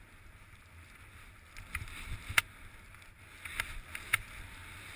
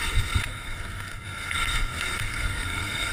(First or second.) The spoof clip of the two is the second